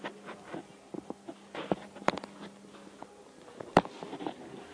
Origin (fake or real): real